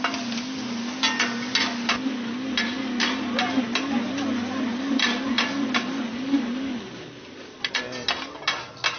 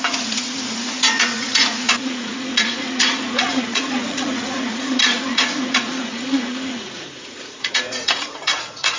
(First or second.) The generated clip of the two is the second